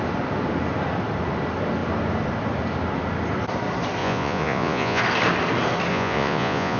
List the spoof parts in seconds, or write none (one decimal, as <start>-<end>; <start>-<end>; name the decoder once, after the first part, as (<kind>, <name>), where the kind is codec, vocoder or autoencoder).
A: 4.0-5.0 (vocoder, Vocos); 5.9-6.8

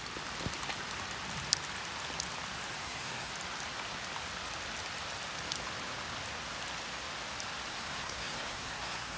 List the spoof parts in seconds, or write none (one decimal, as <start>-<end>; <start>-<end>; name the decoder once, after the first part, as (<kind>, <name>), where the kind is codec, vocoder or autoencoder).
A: 2.8-3.3 (codec, SNAC); 7.7-9.2